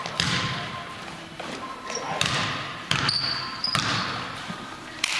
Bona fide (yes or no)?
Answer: no